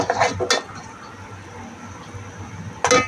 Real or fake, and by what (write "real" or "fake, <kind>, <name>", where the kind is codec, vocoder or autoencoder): real